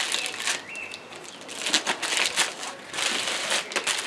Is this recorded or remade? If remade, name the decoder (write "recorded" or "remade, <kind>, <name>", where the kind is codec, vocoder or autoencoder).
recorded